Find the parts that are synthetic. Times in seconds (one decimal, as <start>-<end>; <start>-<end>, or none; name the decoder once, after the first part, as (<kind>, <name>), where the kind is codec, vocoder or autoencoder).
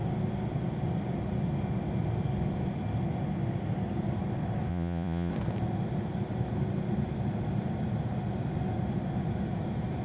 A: 4.7-5.3 (vocoder, Vocos)